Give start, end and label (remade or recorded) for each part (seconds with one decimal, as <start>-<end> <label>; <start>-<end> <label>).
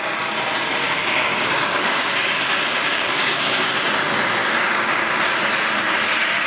0.0-0.8 recorded; 0.8-2.1 remade; 2.1-2.7 recorded; 2.7-3.7 remade; 3.7-4.4 recorded; 4.4-5.0 remade; 5.0-6.5 recorded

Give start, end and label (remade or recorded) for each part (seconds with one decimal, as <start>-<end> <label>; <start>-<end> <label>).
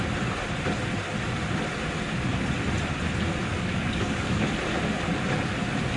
0.0-3.4 recorded; 3.4-4.5 remade; 4.5-6.0 recorded